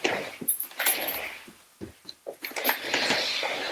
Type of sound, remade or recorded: remade